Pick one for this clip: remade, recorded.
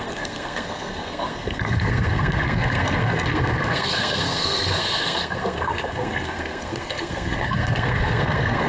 remade